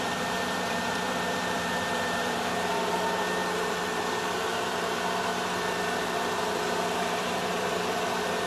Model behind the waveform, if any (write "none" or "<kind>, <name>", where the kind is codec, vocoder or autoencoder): vocoder, BigVGAN v2